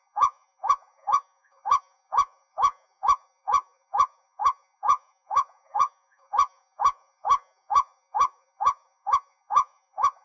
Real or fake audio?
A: fake